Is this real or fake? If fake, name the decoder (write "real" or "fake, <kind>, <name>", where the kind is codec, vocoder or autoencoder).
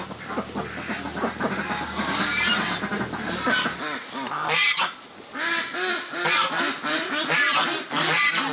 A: real